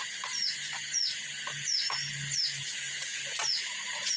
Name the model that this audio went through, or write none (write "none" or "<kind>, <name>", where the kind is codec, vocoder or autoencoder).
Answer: none